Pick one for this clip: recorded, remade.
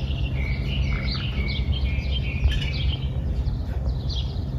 recorded